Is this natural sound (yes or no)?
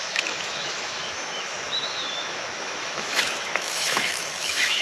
no